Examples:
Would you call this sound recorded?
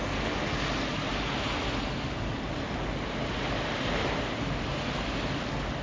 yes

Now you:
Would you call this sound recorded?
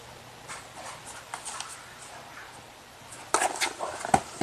yes